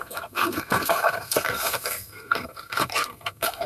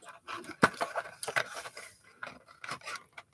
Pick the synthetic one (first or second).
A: first